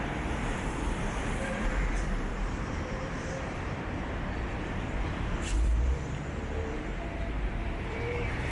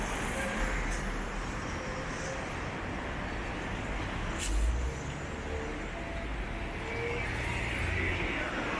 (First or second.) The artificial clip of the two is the first